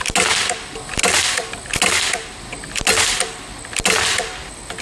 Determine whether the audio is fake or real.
real